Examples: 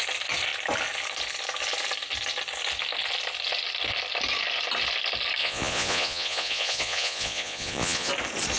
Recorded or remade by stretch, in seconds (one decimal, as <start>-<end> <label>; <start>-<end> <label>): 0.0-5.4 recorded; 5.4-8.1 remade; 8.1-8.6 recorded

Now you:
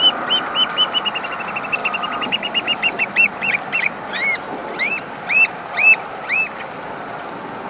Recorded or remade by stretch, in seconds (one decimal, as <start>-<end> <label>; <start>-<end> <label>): 0.0-1.8 recorded; 1.8-3.0 remade; 3.0-4.6 recorded; 4.6-6.1 remade; 6.1-7.7 recorded

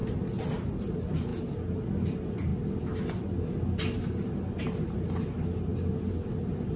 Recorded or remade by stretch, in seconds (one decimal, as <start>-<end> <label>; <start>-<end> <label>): 0.0-6.8 recorded